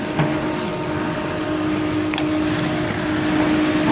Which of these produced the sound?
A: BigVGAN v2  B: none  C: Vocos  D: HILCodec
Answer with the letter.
B